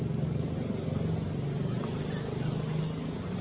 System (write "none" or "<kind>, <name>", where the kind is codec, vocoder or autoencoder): none